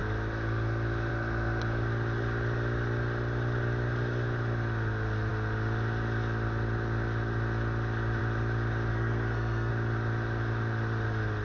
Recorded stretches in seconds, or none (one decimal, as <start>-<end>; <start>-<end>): 0.0-8.9; 9.7-11.4